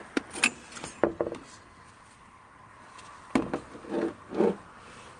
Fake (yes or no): no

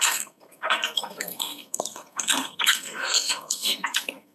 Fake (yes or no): yes